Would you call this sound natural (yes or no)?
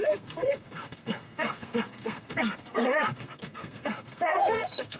no